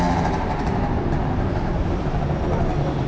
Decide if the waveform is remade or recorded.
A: recorded